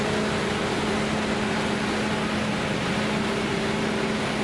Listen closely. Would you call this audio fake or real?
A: real